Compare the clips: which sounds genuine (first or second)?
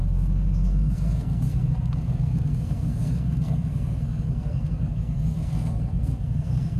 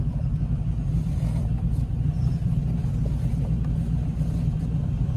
second